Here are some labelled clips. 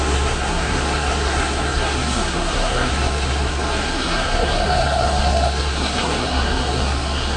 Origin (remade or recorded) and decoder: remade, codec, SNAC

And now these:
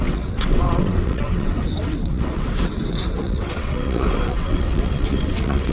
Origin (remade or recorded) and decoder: remade, vocoder, WaveNeXt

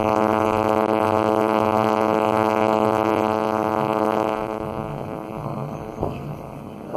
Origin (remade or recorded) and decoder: remade, codec, SNAC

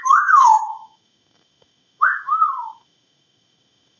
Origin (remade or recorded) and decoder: remade, autoencoder, DAC-VAE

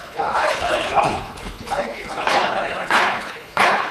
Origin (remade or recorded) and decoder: remade, codec, HILCodec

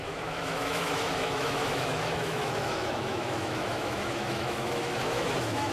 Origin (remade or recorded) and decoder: remade, autoencoder, DAC-VAE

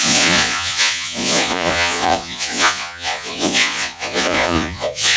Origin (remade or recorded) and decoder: remade, vocoder, Vocos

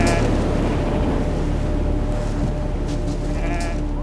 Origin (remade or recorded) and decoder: recorded